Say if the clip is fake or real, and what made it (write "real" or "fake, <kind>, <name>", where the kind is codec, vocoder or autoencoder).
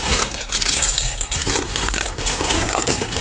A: fake, codec, SNAC